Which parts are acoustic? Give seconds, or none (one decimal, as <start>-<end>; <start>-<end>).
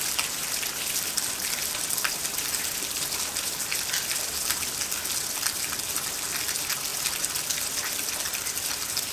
none